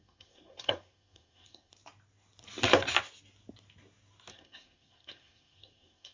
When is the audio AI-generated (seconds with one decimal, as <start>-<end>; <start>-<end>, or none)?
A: 0.0-1.7; 4.3-6.1